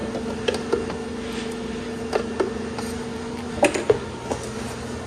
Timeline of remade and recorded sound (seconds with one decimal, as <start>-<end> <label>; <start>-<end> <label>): 0.0-5.1 recorded